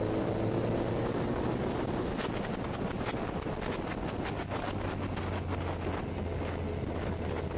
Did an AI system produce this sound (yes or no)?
no